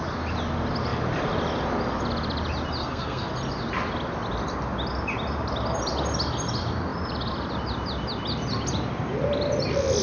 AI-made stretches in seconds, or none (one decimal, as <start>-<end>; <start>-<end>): 2.8-3.3